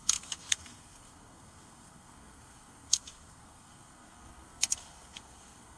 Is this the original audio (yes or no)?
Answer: no